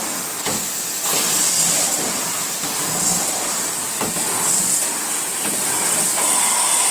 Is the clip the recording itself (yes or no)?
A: yes